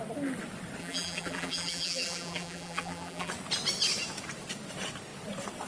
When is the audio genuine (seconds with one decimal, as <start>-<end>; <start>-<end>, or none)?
0.0-0.8; 3.3-5.7